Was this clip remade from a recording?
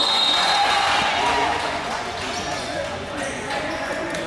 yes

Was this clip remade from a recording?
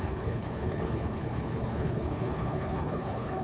yes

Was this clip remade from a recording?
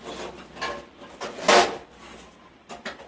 no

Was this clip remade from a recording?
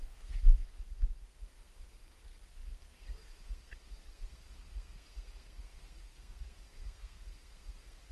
yes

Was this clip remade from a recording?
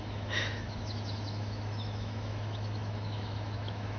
yes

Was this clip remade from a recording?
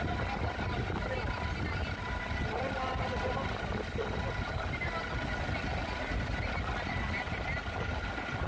no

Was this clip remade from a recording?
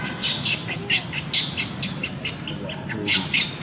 no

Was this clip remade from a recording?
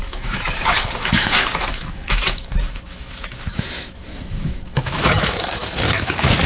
yes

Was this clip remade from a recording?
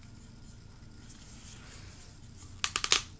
no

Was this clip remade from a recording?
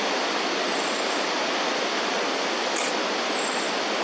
no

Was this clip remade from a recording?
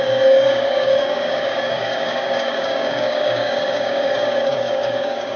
yes